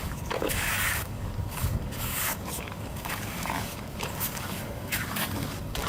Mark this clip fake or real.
fake